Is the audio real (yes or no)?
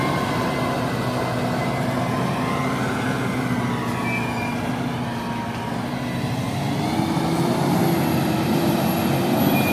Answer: yes